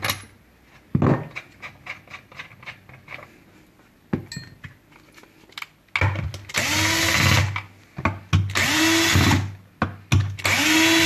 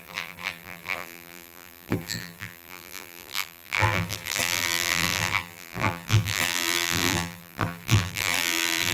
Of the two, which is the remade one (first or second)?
second